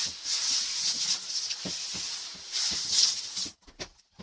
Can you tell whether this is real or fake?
real